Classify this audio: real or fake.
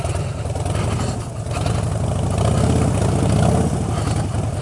real